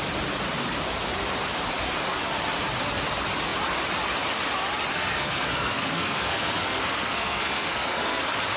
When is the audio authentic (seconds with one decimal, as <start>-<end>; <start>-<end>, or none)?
0.0-4.9; 8.2-8.6